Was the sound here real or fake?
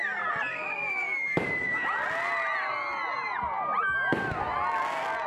real